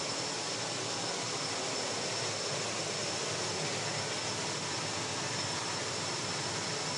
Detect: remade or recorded recorded